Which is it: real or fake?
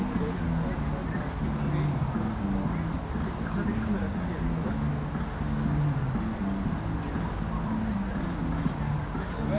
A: real